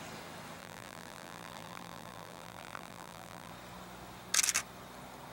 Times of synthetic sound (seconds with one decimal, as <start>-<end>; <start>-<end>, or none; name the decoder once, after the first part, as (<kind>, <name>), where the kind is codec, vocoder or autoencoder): 0.6-3.5 (vocoder, BigVGAN v2)